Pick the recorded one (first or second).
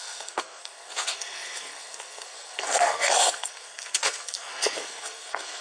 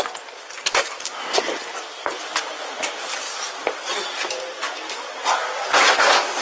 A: second